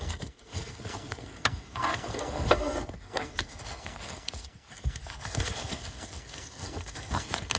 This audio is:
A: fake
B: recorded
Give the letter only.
A